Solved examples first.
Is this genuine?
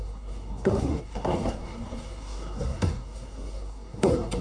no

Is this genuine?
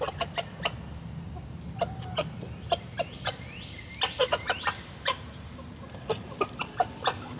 yes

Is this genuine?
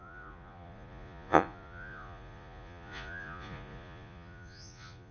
no